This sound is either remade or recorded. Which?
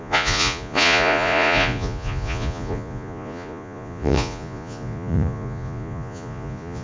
remade